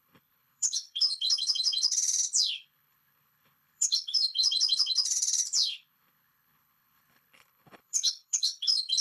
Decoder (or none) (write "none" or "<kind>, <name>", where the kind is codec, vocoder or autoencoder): codec, HILCodec